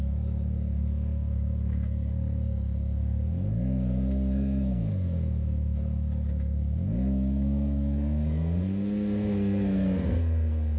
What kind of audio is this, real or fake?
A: fake